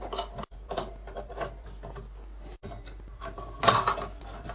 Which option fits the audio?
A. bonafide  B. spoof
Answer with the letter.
A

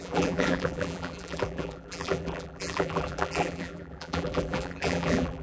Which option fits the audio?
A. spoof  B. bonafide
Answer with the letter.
A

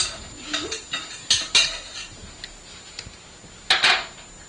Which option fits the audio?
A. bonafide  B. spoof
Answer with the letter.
A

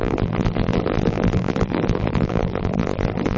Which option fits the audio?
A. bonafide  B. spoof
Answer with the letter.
B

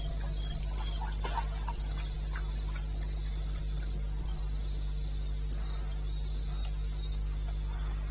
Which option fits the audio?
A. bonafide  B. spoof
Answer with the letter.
B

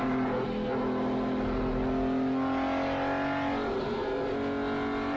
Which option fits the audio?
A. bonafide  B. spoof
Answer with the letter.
A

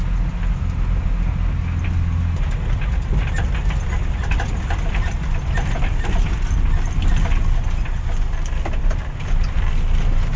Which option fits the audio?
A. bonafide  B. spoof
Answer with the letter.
A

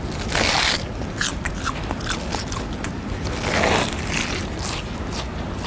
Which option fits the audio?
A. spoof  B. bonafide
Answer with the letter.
B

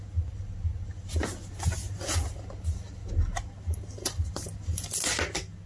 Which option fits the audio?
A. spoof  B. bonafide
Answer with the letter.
B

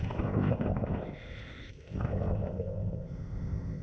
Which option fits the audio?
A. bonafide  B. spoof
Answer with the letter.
B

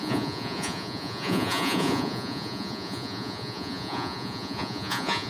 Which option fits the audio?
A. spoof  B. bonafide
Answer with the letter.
A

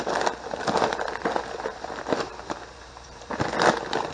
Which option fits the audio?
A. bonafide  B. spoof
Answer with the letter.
B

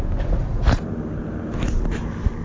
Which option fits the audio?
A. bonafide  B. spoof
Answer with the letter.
A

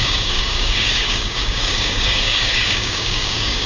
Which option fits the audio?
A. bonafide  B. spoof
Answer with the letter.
B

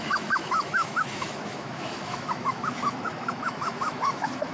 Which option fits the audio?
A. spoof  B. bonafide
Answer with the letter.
A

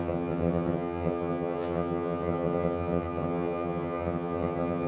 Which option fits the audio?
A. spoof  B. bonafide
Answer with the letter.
A